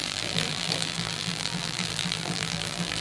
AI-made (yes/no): yes